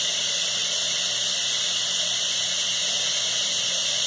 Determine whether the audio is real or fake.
real